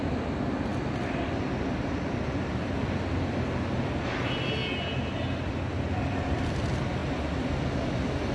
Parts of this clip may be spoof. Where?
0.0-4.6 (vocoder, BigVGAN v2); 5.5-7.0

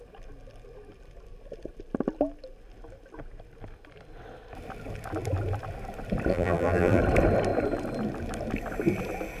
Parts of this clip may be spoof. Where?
6.3-7.0 (vocoder, BigVGAN v2)